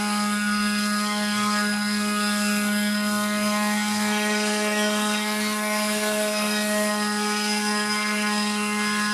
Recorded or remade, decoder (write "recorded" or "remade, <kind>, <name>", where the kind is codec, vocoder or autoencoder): remade, codec, SNAC